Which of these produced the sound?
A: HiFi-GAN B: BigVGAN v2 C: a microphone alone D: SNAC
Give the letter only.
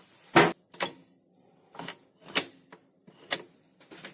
C